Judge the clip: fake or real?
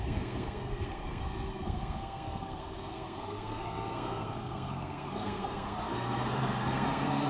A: fake